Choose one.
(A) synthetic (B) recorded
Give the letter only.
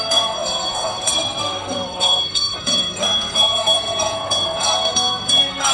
A